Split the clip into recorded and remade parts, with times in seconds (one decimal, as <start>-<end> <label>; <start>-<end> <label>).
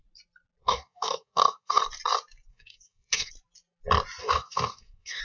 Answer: 0.0-0.6 recorded; 0.6-1.8 remade; 1.8-2.5 recorded; 2.5-3.3 remade; 3.3-4.2 recorded; 4.2-5.2 remade